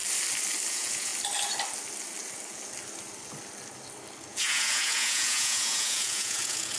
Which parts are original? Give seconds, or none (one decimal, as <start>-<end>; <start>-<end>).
0.0-0.7; 1.1-4.3